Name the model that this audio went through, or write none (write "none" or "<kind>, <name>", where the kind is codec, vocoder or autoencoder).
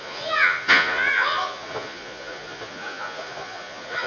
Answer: vocoder, Vocos